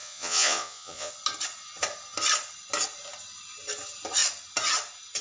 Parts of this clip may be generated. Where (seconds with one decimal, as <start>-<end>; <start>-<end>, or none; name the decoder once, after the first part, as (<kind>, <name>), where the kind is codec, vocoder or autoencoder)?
0.0-1.1 (vocoder, Vocos)